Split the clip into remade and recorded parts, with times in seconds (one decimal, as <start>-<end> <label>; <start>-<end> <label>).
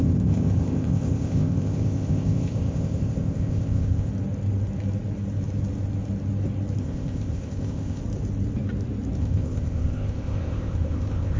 0.0-4.1 remade; 4.1-6.8 recorded; 6.8-8.0 remade; 8.0-9.2 recorded; 9.2-11.4 remade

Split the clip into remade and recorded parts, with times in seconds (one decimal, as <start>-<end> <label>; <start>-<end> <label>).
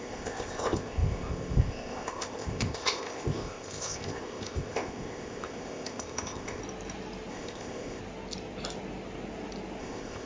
0.0-6.6 remade; 6.6-7.3 recorded; 7.3-8.0 remade; 8.0-9.8 recorded; 9.8-10.3 remade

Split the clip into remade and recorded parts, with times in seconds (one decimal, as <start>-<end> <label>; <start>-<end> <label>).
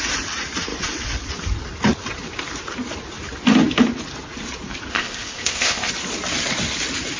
0.0-4.9 recorded; 4.9-5.9 remade; 5.9-7.2 recorded